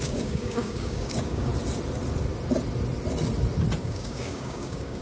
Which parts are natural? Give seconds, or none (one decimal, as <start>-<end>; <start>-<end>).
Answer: 1.5-3.8

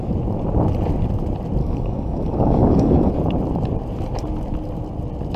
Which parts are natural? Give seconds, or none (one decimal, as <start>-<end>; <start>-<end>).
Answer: 0.0-1.6; 3.1-5.4

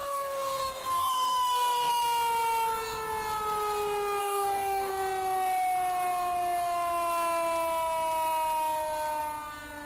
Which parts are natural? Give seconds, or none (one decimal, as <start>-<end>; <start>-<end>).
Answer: 1.9-4.2; 4.9-9.9

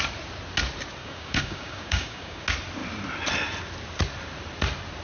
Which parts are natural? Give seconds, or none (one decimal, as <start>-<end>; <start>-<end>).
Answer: 0.0-1.0; 2.4-5.0

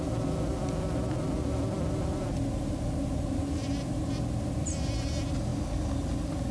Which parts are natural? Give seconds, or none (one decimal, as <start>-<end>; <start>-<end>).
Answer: 0.0-6.5